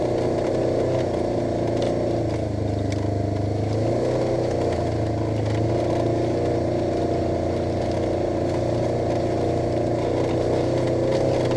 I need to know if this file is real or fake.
real